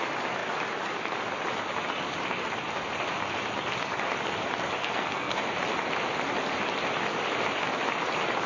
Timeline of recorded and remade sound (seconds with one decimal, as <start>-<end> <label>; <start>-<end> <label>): 0.0-4.8 recorded; 4.8-5.4 remade; 5.4-8.5 recorded